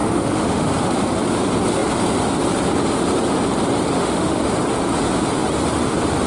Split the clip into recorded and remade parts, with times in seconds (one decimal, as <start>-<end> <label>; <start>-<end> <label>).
0.0-0.7 remade; 0.7-4.0 recorded; 4.0-4.5 remade; 4.5-6.3 recorded